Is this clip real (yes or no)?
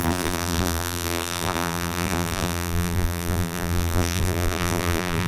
no